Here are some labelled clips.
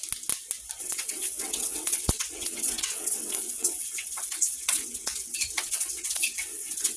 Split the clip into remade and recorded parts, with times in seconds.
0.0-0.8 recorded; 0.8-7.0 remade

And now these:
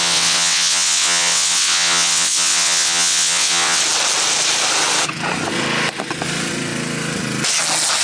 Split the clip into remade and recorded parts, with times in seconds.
0.0-3.8 remade; 3.8-8.0 recorded

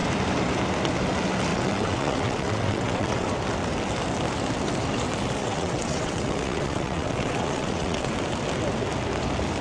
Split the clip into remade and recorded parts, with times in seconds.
0.0-1.5 recorded; 1.5-3.3 remade; 3.3-5.4 recorded; 5.4-8.1 remade; 8.1-9.6 recorded